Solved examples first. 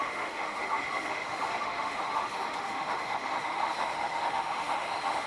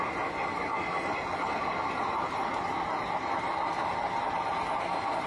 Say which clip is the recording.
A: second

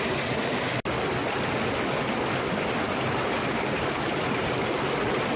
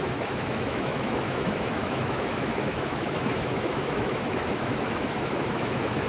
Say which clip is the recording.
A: first